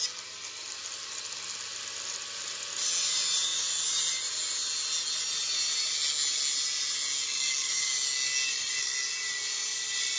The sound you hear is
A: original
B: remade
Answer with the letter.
A